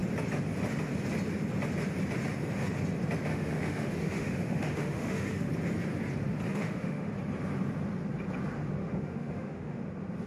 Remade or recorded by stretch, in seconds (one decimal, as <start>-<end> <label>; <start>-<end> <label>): 0.0-3.3 recorded; 3.3-5.5 remade; 5.5-6.5 recorded; 6.5-7.1 remade; 7.1-8.8 recorded; 8.8-9.8 remade; 9.8-10.3 recorded